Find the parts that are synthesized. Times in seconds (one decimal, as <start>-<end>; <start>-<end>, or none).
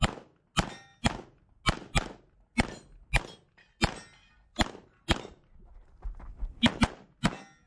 none